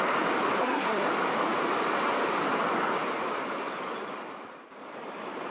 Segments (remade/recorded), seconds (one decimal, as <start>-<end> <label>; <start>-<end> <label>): 0.0-0.6 recorded; 0.6-1.1 remade; 1.1-5.5 recorded

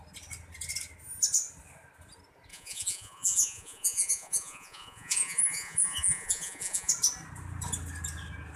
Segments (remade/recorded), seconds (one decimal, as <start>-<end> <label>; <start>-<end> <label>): 0.0-2.5 recorded; 2.5-6.9 remade; 6.9-8.6 recorded

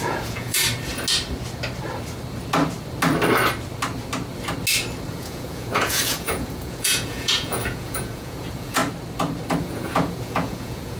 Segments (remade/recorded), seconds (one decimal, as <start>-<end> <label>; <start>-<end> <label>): 0.0-0.6 remade; 0.6-5.1 recorded; 5.1-8.8 remade; 8.8-9.6 recorded; 9.6-11.0 remade

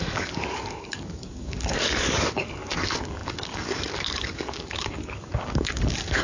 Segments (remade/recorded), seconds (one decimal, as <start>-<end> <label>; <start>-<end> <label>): 0.0-6.2 remade